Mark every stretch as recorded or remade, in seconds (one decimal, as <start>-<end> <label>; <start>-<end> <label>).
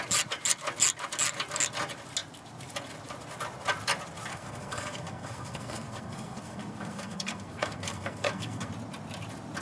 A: 0.0-4.3 recorded; 4.3-8.7 remade; 8.7-9.6 recorded